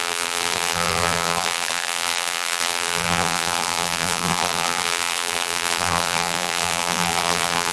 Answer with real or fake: fake